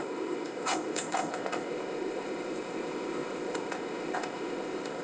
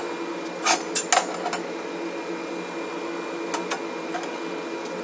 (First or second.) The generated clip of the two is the first